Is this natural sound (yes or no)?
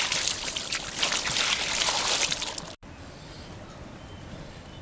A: yes